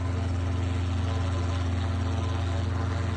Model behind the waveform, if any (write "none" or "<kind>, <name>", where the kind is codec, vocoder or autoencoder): none